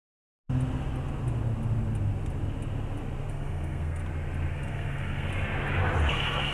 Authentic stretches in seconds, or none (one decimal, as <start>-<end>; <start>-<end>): 0.4-3.3; 4.0-4.5; 5.3-6.1